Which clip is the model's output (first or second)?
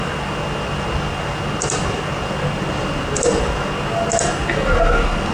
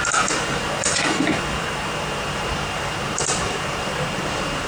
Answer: second